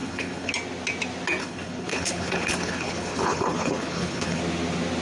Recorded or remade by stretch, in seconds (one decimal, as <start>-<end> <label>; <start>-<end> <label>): 0.0-0.5 remade; 0.5-1.4 recorded; 1.4-4.4 remade; 4.4-5.0 recorded